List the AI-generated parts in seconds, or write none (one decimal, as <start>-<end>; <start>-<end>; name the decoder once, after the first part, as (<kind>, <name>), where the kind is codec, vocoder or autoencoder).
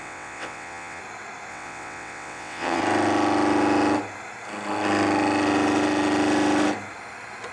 0.0-1.0 (vocoder, WaveNeXt); 1.5-2.8